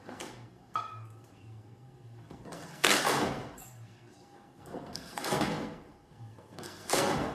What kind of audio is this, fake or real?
fake